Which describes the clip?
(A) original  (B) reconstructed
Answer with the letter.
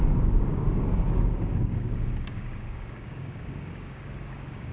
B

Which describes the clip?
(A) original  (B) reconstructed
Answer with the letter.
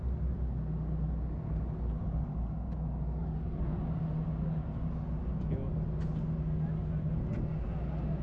A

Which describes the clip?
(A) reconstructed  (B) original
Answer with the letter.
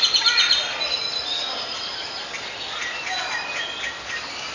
B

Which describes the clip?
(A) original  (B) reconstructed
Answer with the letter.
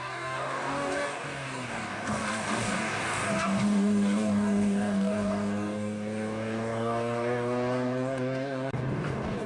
B